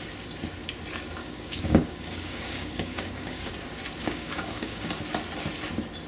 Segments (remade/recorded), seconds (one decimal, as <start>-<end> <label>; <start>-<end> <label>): 0.0-1.2 recorded; 1.2-3.5 remade; 3.5-4.0 recorded; 4.0-4.9 remade; 4.9-6.1 recorded